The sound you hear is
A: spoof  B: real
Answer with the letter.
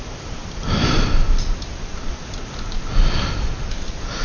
B